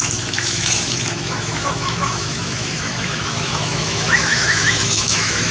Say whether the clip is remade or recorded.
remade